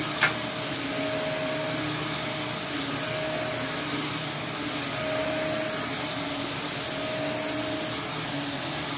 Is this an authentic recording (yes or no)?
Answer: yes